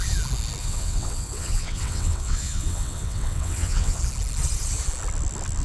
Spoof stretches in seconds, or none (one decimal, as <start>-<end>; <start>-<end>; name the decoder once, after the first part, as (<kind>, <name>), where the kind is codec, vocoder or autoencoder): 0.6-4.0 (vocoder, WaveNeXt)